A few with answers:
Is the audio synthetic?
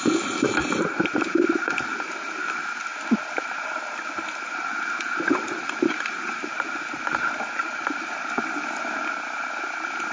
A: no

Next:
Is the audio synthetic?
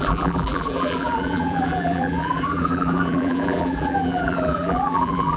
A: yes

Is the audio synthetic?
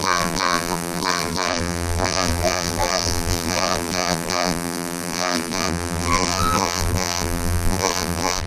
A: yes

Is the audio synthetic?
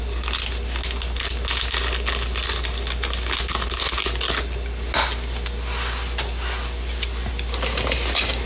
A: no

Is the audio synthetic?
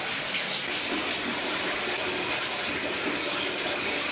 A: no